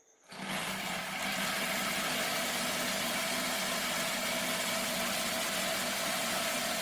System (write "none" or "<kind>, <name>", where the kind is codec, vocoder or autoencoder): none